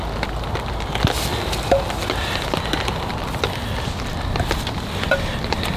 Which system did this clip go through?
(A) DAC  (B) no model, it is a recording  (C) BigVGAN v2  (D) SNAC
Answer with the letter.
B